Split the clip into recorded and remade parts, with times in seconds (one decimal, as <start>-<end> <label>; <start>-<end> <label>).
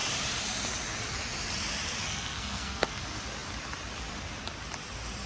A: 0.0-2.0 recorded; 2.0-3.0 remade; 3.0-5.3 recorded